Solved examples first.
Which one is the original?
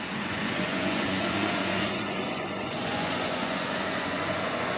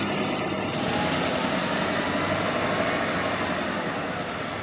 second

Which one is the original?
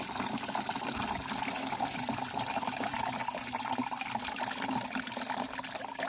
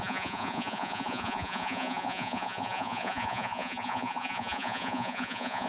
first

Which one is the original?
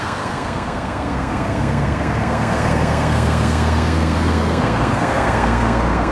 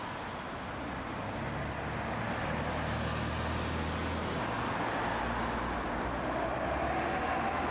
second